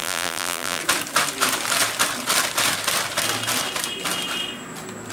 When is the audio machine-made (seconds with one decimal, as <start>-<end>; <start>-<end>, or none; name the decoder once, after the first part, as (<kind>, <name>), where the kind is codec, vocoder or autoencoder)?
0.0-0.8 (vocoder, BigVGAN v2)